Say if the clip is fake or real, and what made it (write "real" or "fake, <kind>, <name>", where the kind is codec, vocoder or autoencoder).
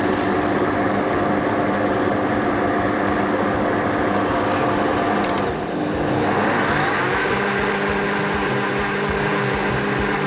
real